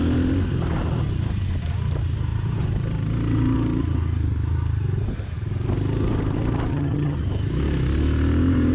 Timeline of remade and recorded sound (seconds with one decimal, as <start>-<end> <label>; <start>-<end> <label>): 0.0-6.7 recorded; 6.7-7.2 remade; 7.2-8.7 recorded